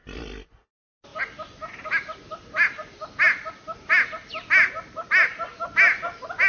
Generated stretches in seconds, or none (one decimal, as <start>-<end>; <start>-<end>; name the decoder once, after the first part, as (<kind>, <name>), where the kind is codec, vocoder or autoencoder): none